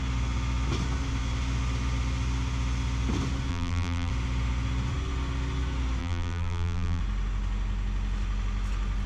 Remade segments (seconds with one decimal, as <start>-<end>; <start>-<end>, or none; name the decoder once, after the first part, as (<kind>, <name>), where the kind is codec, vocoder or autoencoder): 3.5-4.1 (vocoder, BigVGAN v2); 6.0-7.0